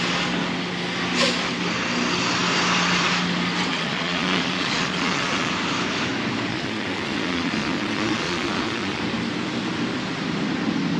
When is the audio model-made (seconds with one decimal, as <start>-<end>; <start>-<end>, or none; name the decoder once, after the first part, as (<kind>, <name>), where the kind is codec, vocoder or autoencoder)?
3.7-5.5 (vocoder, Vocos); 6.5-9.0

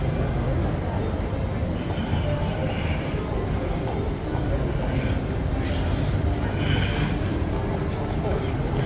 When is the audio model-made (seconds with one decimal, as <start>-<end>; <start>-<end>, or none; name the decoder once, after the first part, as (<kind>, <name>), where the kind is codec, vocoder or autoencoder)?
none

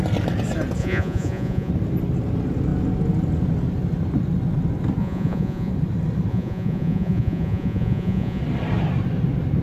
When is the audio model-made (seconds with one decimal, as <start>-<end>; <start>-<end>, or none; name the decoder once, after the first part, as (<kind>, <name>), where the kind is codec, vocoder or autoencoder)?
0.8-1.7 (vocoder, Vocos); 5.0-5.7; 6.3-8.4

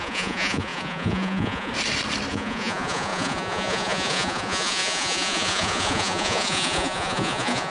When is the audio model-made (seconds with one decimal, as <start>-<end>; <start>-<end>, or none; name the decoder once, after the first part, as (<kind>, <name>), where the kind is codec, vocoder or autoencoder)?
0.0-1.7 (vocoder, Vocos); 2.3-7.7

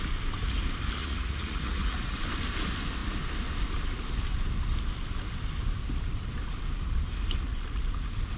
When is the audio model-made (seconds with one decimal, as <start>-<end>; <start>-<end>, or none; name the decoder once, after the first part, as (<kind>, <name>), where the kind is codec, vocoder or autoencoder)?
1.0-2.2 (vocoder, Vocos)

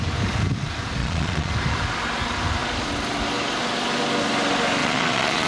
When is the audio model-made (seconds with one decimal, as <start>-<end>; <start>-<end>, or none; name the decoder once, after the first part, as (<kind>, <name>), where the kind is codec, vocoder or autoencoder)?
1.0-1.5 (vocoder, Vocos); 4.8-5.5

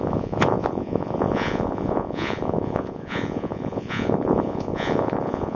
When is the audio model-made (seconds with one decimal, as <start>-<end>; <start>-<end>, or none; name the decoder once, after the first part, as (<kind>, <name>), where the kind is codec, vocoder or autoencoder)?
0.0-5.6 (vocoder, Vocos)

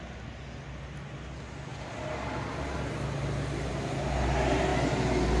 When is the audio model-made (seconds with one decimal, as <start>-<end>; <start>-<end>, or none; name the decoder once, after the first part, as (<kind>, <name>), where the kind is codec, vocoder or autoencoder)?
none